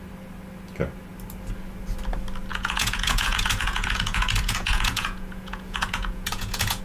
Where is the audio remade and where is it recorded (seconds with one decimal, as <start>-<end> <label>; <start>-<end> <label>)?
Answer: 0.0-2.5 recorded; 2.5-6.8 remade